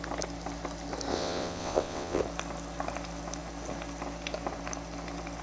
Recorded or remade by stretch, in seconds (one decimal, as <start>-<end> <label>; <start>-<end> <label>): 0.0-1.1 recorded; 1.1-2.2 remade; 2.2-5.4 recorded